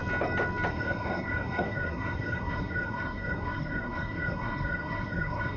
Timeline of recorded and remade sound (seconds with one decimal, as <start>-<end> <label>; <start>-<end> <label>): 0.0-0.7 recorded; 0.7-5.6 remade